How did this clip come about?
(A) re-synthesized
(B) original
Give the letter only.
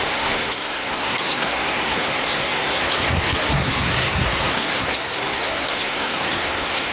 A